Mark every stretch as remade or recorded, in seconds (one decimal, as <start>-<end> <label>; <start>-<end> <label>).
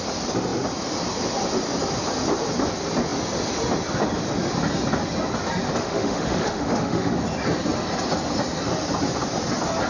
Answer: 0.0-5.8 recorded; 5.8-7.1 remade; 7.1-9.9 recorded